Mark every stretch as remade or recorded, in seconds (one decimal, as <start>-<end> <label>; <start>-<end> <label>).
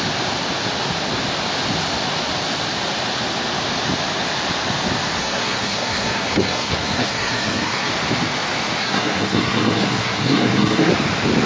0.0-5.2 recorded; 5.2-7.9 remade; 7.9-8.8 recorded; 8.8-10.9 remade; 10.9-11.5 recorded